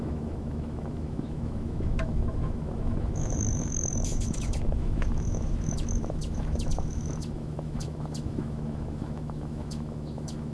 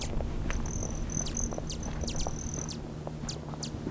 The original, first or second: second